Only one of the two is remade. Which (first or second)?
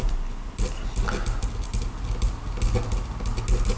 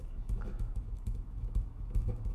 second